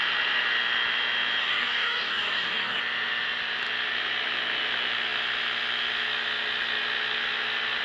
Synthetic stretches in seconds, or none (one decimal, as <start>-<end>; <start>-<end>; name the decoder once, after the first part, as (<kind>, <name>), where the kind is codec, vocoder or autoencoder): 1.4-2.8 (codec, DAC)